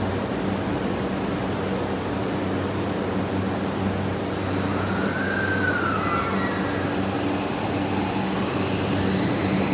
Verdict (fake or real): real